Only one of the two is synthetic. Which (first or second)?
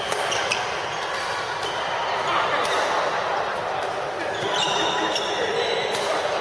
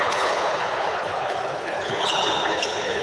second